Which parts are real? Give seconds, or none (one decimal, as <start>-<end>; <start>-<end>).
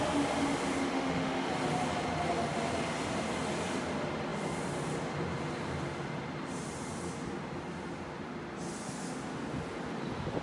0.0-0.9; 1.5-10.4